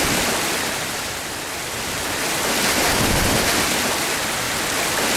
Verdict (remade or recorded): recorded